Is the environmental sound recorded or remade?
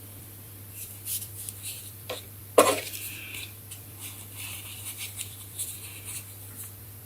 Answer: remade